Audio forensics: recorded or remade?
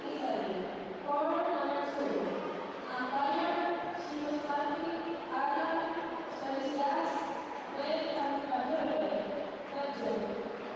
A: remade